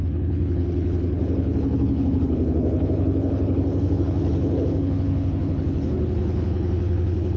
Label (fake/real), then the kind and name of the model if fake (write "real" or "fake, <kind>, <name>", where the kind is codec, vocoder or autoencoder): fake, codec, HILCodec